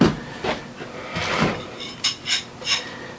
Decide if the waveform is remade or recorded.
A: recorded